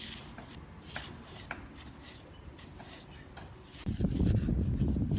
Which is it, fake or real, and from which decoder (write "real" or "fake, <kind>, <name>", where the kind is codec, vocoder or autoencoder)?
real